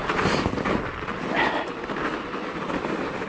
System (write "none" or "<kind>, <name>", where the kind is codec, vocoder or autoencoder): none